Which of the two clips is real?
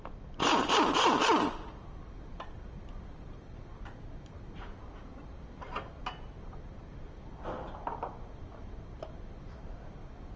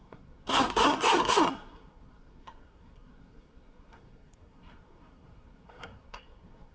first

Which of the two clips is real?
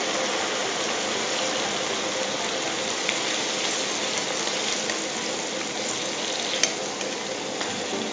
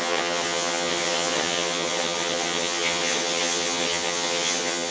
first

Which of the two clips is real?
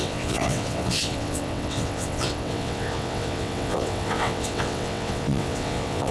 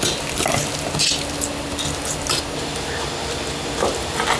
second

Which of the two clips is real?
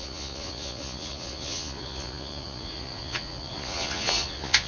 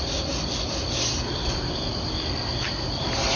second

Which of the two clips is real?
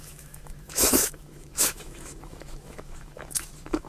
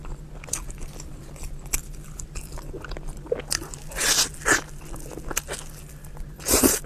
second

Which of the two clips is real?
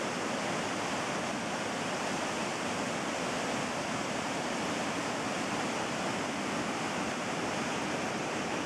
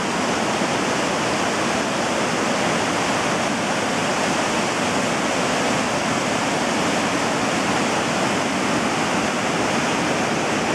second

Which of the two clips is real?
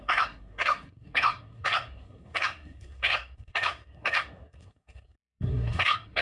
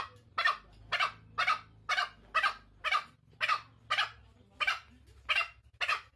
second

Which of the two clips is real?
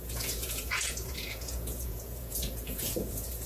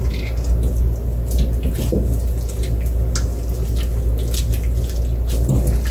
second